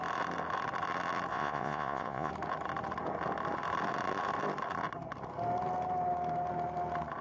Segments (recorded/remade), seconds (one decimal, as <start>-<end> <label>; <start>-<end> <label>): 0.0-1.3 recorded; 1.3-2.3 remade; 2.3-7.2 recorded